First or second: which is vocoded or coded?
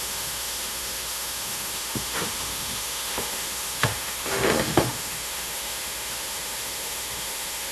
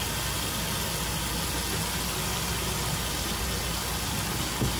first